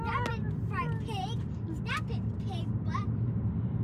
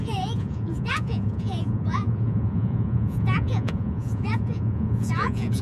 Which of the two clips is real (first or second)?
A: first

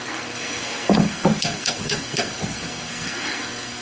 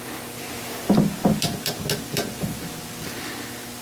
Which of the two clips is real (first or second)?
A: second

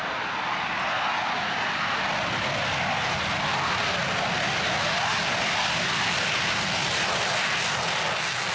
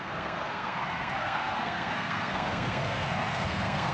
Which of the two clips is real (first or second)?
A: first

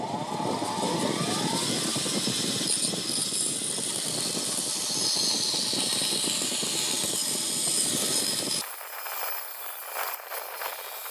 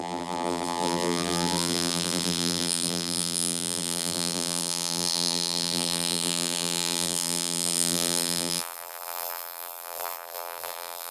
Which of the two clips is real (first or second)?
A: first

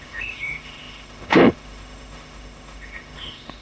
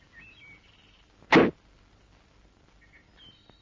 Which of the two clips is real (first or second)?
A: second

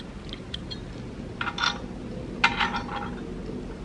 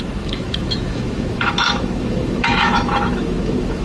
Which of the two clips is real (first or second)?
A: first